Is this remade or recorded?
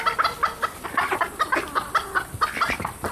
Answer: remade